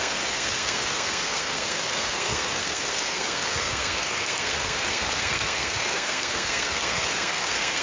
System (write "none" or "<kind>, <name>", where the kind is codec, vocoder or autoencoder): codec, SNAC